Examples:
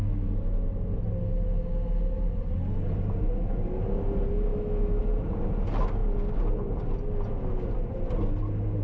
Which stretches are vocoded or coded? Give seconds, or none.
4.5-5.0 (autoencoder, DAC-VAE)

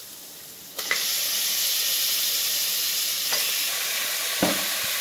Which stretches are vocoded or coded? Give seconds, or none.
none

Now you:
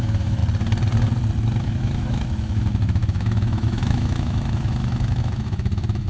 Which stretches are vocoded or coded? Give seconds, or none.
0.0-0.4 (autoencoder, DAC-VAE); 1.6-6.1

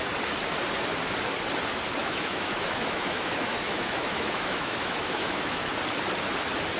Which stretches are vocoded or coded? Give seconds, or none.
2.0-5.7 (autoencoder, DAC-VAE)

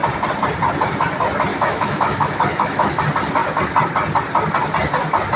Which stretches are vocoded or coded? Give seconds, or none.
1.5-3.0 (autoencoder, DAC-VAE)

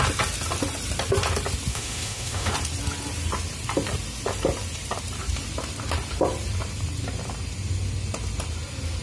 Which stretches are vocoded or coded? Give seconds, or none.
1.7-2.5 (autoencoder, DAC-VAE)

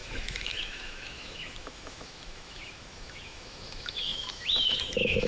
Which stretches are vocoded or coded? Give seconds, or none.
0.0-5.3 (autoencoder, DAC-VAE)

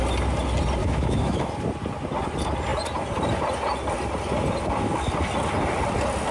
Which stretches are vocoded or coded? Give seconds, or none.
0.8-1.5 (autoencoder, DAC-VAE)